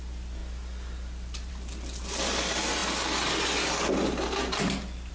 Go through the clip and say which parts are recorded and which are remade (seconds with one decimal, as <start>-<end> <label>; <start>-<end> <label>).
0.0-5.1 recorded